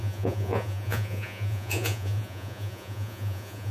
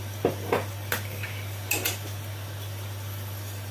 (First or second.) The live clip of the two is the second